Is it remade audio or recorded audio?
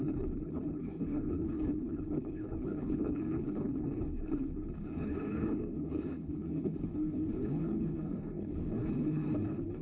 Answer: remade